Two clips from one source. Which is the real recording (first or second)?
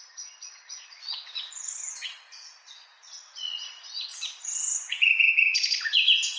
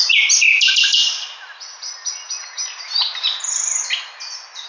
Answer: second